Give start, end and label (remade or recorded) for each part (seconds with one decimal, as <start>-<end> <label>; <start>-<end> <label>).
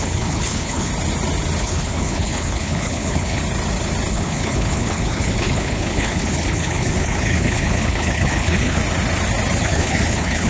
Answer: 0.0-0.9 remade; 0.9-1.6 recorded; 1.6-3.4 remade; 3.4-4.1 recorded; 4.1-8.8 remade; 8.8-9.6 recorded; 9.6-10.5 remade